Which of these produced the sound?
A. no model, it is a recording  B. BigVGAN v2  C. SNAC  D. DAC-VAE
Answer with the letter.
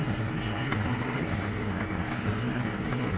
C